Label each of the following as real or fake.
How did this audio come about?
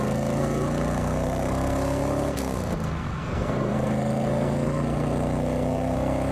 fake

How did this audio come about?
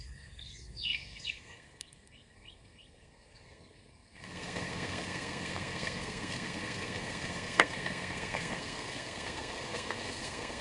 fake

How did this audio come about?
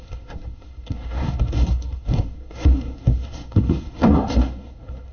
fake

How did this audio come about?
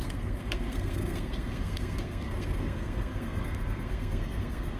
fake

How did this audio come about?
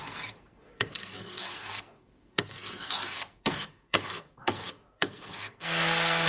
fake